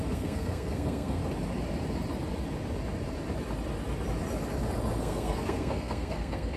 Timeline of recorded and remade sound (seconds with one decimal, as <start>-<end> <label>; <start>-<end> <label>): 0.0-1.2 remade; 1.2-5.0 recorded; 5.0-6.6 remade